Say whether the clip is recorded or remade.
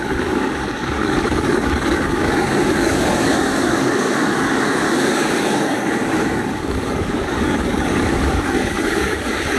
remade